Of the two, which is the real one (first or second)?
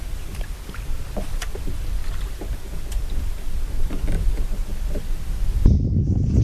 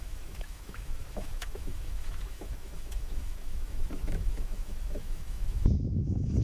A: first